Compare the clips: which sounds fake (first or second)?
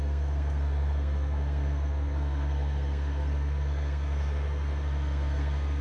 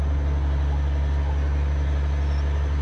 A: first